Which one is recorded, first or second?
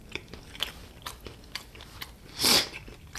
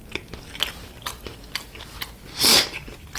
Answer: second